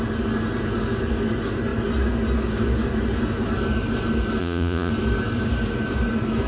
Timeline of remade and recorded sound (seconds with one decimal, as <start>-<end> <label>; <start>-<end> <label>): 0.0-4.4 recorded; 4.4-4.9 remade; 4.9-6.5 recorded